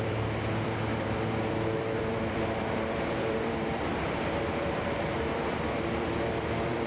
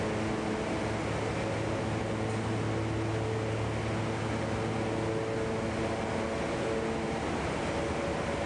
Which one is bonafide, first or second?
second